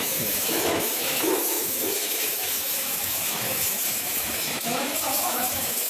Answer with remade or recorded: remade